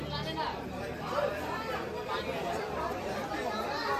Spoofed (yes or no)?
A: no